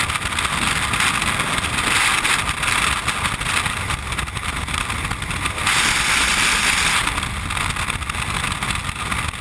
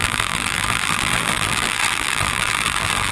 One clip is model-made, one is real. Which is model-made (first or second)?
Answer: second